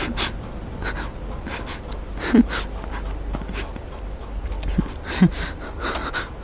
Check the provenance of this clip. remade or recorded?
recorded